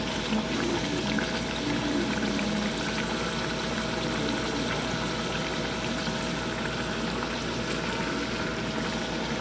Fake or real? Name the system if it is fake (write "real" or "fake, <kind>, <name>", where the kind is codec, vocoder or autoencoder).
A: real